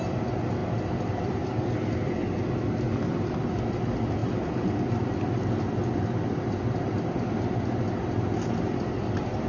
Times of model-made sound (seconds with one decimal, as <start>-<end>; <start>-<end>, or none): 0.0-9.5